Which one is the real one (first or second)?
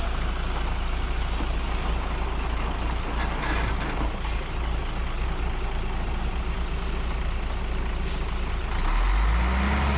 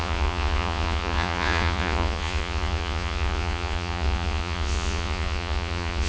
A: first